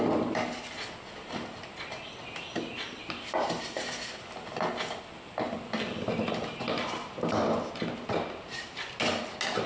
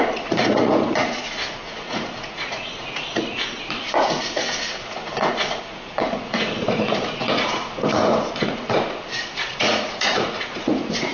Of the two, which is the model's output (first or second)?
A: second